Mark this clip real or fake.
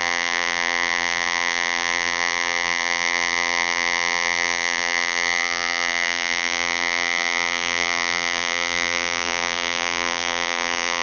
fake